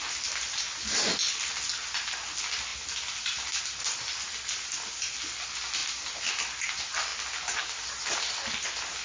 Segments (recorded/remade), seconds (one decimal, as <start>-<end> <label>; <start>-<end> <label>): 0.0-9.0 recorded